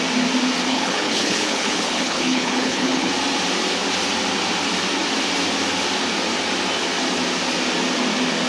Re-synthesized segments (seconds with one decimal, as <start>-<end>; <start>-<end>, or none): 0.7-3.1